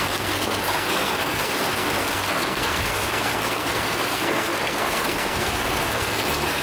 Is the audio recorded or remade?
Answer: remade